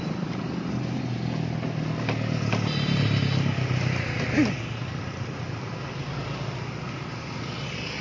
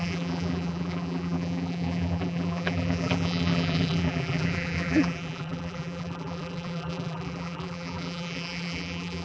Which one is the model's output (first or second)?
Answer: second